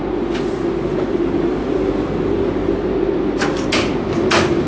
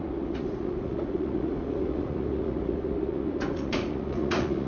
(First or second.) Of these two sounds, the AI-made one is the second